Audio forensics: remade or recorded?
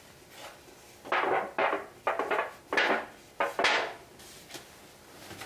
recorded